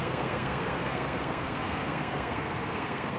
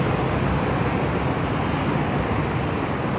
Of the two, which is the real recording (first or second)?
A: second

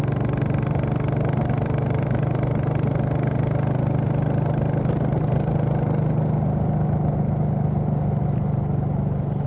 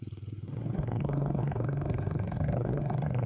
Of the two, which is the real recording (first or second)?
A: first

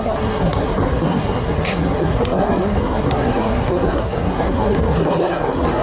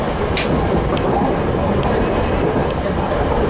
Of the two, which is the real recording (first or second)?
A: second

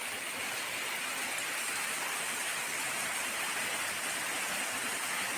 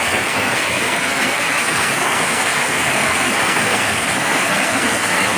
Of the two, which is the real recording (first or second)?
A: first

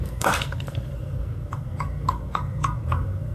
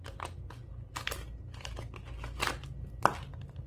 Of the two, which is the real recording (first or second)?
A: second